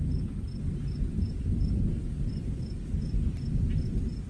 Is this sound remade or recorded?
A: recorded